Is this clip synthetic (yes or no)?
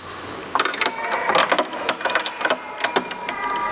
no